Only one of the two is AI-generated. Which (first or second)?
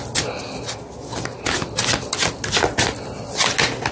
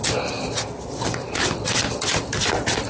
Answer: second